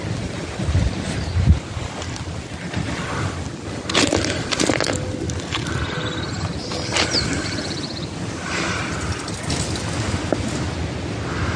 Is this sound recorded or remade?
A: recorded